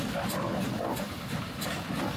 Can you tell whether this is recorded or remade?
recorded